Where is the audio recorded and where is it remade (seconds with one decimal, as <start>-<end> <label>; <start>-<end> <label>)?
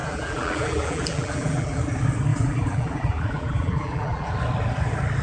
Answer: 0.0-1.8 remade; 1.8-2.3 recorded; 2.3-4.3 remade; 4.3-5.2 recorded